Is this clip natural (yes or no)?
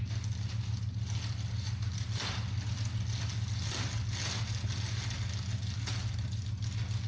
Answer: yes